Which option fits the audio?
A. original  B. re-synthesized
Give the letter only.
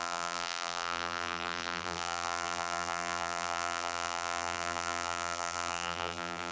B